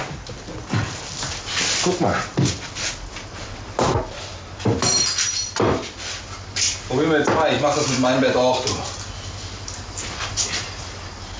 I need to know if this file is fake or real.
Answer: real